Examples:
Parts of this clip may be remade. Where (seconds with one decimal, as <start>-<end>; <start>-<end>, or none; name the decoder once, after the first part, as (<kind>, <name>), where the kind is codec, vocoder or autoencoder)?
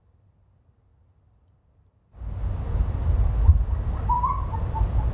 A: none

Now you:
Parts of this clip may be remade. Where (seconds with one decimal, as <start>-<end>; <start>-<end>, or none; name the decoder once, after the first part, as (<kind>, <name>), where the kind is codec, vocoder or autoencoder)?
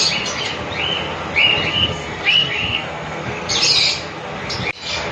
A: 1.7-3.5 (codec, SNAC)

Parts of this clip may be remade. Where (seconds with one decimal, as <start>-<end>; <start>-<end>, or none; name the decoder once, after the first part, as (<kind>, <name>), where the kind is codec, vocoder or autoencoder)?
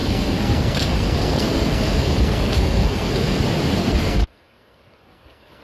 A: 0.0-3.4 (codec, SNAC); 3.8-5.6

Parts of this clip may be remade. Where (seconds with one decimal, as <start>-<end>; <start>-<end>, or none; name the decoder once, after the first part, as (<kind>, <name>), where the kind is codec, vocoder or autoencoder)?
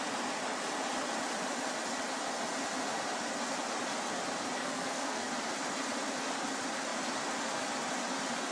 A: 4.6-5.3 (codec, SNAC)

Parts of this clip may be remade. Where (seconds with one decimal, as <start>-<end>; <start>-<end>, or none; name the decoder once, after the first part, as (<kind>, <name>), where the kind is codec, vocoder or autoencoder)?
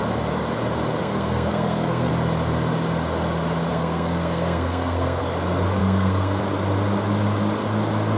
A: 1.0-2.1 (codec, SNAC); 3.7-5.2; 5.8-6.4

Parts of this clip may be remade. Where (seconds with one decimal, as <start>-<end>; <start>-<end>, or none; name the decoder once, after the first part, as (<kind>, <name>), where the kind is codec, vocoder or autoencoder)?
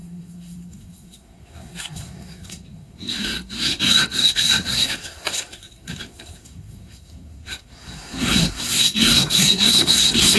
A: 0.0-10.4 (codec, SNAC)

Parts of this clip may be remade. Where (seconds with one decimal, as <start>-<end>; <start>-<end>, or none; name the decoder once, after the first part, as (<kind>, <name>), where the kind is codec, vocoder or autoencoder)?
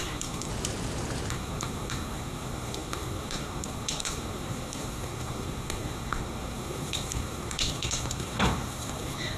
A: 0.0-0.5 (codec, SNAC); 1.3-9.4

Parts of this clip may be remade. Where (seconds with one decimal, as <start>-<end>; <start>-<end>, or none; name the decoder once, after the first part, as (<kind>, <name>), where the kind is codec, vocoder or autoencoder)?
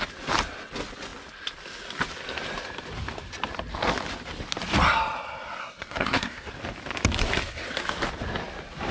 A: 5.6-6.5 (codec, SNAC)